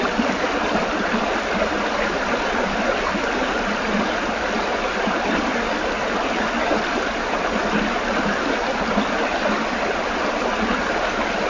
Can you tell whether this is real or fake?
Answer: real